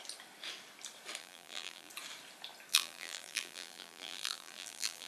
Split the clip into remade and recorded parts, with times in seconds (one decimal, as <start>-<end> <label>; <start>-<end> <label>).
0.0-1.2 recorded; 1.2-1.9 remade; 1.9-2.7 recorded; 2.7-5.1 remade